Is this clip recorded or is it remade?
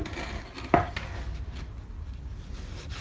recorded